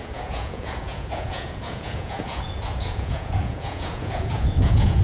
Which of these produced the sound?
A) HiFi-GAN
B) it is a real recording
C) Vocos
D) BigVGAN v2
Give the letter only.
C